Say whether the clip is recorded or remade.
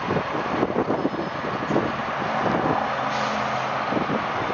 recorded